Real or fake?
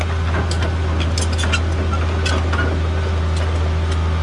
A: real